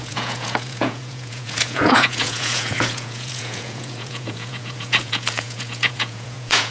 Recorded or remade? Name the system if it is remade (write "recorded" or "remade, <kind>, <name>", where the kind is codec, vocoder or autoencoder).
remade, vocoder, Vocos